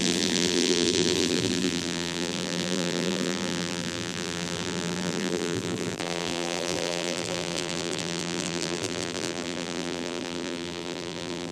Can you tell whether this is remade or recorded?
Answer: remade